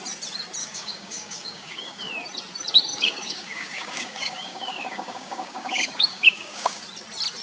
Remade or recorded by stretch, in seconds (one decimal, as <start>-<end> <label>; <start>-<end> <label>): 0.0-0.6 recorded; 0.6-2.1 remade; 2.1-2.9 recorded; 2.9-6.8 remade; 6.8-7.4 recorded